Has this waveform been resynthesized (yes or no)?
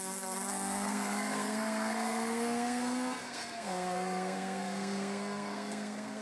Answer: yes